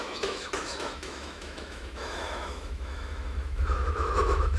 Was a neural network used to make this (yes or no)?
yes